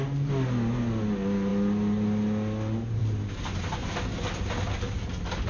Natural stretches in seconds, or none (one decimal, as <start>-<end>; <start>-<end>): 0.0-5.5